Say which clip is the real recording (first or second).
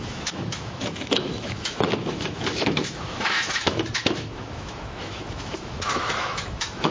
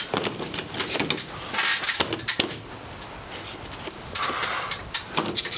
second